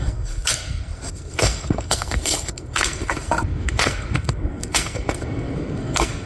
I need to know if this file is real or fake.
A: fake